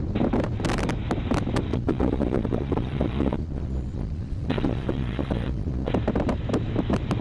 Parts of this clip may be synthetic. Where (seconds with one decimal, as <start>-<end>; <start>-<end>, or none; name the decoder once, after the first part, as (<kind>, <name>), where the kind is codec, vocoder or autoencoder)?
1.7-5.9 (vocoder, Vocos)